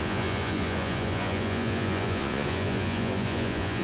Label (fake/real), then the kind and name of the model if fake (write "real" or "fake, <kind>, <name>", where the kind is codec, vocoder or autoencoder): fake, vocoder, Vocos